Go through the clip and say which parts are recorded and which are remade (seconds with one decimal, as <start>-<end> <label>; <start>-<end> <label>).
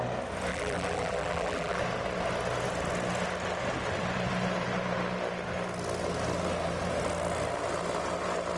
0.0-0.5 recorded; 0.5-1.8 remade; 1.8-8.6 recorded